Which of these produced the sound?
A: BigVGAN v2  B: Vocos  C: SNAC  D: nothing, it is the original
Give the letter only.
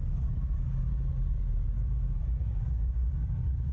D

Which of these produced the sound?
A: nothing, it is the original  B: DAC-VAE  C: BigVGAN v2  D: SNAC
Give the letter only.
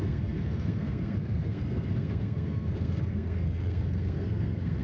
D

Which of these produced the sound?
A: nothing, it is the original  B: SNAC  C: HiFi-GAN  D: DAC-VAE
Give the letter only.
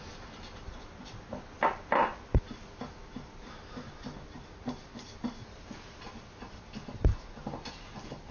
A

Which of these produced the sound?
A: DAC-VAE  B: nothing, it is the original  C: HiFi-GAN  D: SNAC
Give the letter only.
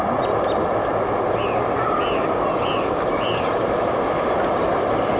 B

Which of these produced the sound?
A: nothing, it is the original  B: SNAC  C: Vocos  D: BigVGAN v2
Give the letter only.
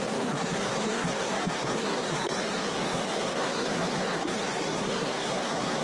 B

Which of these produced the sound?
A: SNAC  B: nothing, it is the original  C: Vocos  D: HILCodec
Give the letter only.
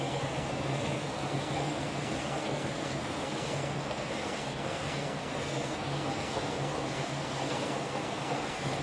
A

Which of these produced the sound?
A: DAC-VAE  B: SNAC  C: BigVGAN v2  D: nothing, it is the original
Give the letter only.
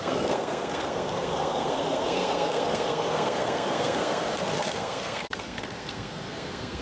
B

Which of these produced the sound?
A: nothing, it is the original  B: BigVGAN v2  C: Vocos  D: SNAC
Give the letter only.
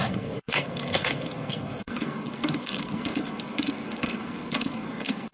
D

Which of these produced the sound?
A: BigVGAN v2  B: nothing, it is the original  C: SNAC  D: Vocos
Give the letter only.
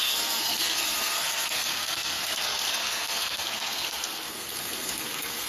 C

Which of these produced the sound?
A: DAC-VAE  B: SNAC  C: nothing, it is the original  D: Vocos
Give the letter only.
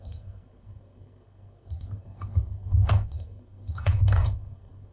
B